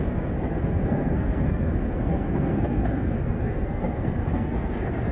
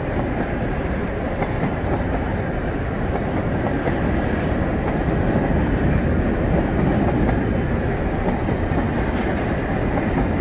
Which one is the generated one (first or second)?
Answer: first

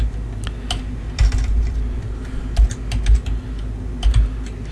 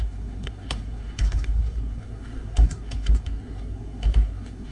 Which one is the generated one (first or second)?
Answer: second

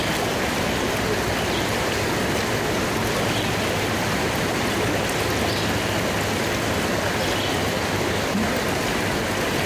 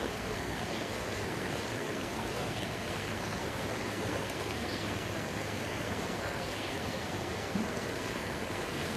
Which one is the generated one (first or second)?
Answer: second